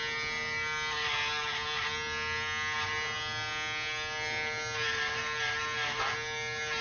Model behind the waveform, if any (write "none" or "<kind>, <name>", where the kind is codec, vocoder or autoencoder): none